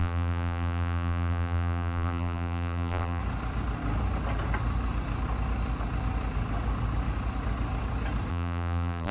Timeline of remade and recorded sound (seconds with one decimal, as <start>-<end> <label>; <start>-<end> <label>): 0.0-3.2 remade; 3.2-8.3 recorded; 8.3-9.1 remade